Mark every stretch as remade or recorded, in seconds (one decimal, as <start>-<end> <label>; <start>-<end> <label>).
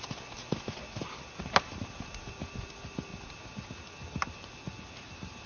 0.0-5.5 recorded